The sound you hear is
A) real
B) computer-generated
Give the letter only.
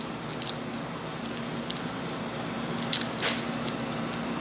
A